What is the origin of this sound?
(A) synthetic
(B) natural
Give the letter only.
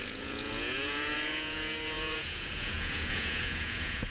A